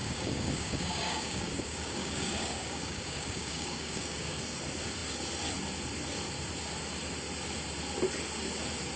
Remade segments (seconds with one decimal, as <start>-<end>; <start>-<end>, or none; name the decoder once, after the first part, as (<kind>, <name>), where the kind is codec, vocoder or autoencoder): 0.0-4.4 (codec, DAC)